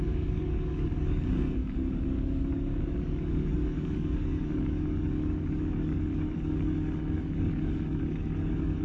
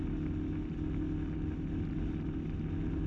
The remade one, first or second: first